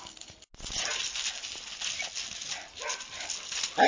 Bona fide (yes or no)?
yes